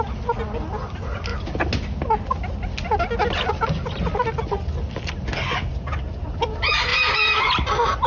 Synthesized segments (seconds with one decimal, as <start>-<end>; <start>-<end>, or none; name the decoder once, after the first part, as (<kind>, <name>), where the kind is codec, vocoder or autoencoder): none